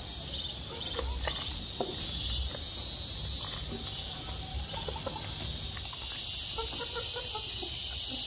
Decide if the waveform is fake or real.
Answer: real